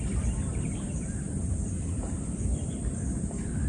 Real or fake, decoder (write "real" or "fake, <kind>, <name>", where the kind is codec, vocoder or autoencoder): fake, vocoder, BigVGAN v2